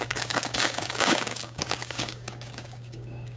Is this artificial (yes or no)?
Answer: yes